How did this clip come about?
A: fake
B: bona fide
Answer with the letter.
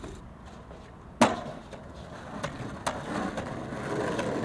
B